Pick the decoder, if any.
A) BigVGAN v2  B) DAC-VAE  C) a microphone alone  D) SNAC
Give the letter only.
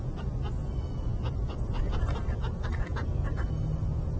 C